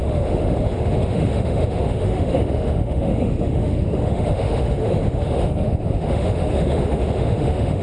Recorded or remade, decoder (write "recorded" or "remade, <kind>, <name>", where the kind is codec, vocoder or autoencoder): remade, autoencoder, DAC-VAE